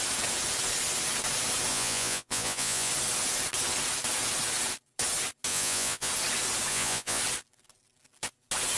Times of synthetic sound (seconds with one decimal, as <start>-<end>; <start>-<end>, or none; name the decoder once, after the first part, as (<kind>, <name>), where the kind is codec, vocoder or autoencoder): 1.7-2.9 (vocoder, Vocos); 5.5-6.1; 6.7-7.2